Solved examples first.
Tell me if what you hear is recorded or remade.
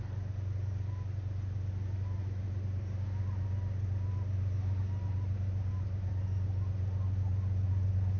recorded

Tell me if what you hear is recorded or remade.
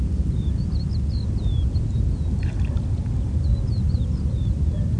recorded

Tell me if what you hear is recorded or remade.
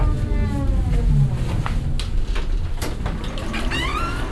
recorded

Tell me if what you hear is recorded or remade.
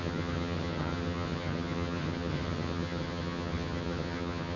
remade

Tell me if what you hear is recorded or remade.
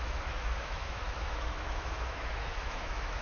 remade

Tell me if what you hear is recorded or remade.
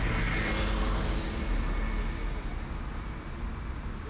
recorded